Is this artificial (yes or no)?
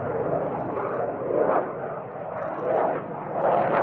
no